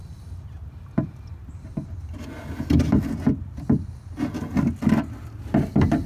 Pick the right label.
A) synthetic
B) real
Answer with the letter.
B